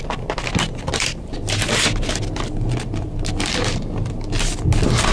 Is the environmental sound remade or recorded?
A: recorded